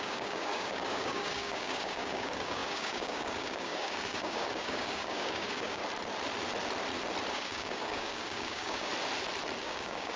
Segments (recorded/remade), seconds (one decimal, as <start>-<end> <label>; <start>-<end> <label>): 0.0-5.8 remade; 5.8-7.3 recorded; 7.3-8.9 remade; 8.9-9.6 recorded; 9.6-10.2 remade